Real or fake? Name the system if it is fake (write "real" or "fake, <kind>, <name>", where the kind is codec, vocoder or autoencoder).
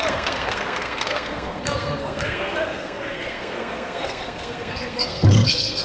fake, codec, SNAC